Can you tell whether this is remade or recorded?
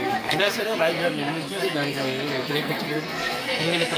remade